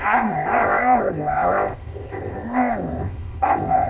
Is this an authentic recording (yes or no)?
no